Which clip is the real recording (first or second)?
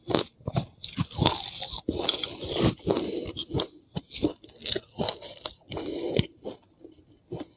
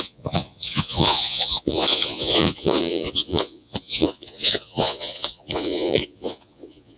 first